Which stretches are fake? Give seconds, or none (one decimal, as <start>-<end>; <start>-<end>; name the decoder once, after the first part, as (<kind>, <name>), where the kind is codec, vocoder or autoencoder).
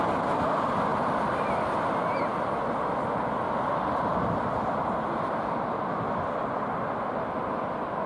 none